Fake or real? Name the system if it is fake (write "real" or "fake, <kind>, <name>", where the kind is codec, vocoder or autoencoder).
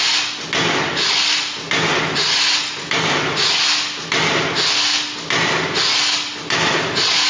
real